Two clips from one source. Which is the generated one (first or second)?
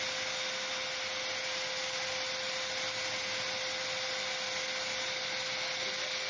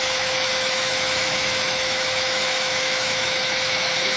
second